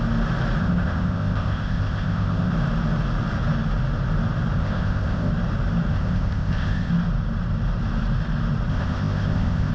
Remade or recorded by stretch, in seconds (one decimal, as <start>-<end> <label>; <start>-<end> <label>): 0.0-0.6 recorded; 0.6-2.5 remade; 2.5-4.6 recorded; 4.6-5.3 remade; 5.3-5.9 recorded; 5.9-6.9 remade; 6.9-8.7 recorded; 8.7-9.7 remade